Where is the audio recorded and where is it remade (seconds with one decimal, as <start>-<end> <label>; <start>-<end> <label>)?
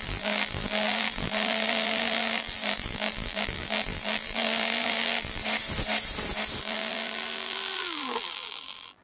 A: 0.0-5.4 remade; 5.4-6.6 recorded; 6.6-9.0 remade